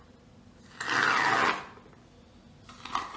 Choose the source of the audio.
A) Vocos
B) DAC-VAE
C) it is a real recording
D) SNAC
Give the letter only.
C